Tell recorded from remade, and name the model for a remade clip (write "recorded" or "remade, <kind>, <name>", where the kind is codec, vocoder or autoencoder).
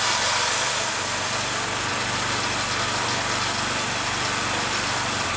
recorded